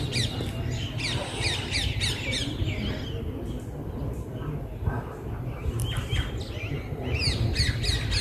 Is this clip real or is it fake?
real